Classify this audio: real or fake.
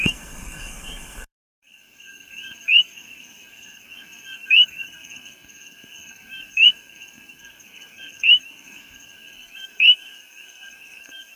fake